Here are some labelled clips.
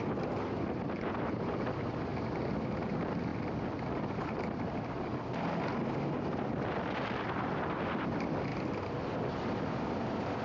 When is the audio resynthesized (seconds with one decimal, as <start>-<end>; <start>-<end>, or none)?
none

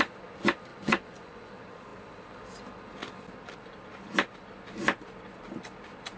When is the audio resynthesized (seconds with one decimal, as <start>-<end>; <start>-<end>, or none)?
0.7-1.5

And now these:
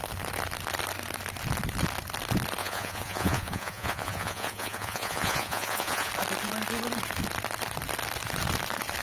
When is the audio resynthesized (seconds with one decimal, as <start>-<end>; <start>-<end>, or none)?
2.6-6.1

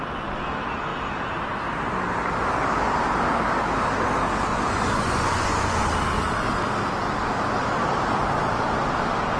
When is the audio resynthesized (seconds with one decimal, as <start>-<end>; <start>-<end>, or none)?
4.5-5.8

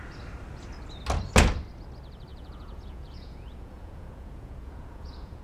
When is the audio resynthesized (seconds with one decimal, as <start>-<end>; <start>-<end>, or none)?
2.3-5.4

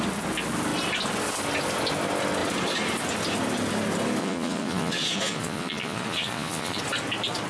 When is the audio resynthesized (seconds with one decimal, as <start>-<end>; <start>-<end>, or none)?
4.2-6.8